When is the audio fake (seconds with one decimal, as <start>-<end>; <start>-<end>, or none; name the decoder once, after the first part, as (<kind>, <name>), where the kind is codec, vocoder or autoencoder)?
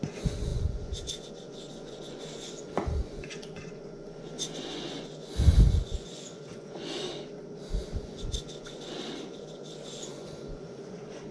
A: 0.0-7.1 (vocoder, Vocos); 8.0-8.9; 9.4-11.3